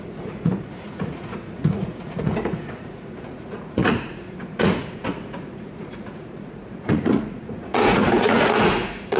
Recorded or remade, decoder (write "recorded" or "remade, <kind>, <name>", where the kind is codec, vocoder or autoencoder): remade, vocoder, Vocos